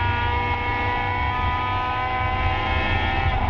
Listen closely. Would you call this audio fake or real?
real